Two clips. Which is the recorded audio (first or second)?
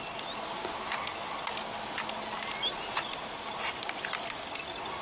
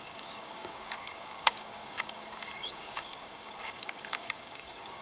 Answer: first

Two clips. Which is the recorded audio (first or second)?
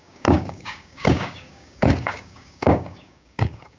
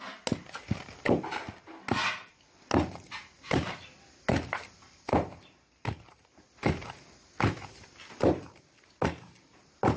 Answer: second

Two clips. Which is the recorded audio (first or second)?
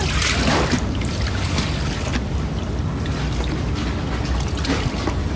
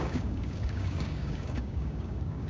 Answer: first